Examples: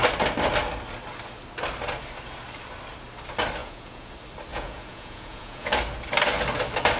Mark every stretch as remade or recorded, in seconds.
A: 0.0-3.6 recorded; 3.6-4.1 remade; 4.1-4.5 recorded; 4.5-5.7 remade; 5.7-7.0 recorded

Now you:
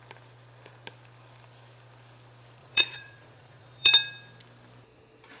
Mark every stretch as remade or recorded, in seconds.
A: 0.0-2.6 recorded; 2.6-3.9 remade; 3.9-5.4 recorded

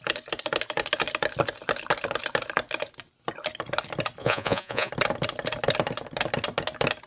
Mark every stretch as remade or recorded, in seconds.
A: 0.0-4.2 recorded; 4.2-4.9 remade; 4.9-7.1 recorded

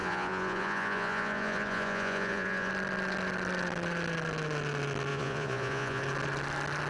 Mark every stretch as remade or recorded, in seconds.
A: 0.0-2.7 remade; 2.7-5.1 recorded; 5.1-6.0 remade; 6.0-6.9 recorded

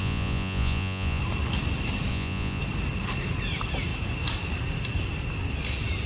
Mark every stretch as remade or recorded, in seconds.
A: 0.0-1.2 remade; 1.2-2.1 recorded; 2.1-2.6 remade; 2.6-6.1 recorded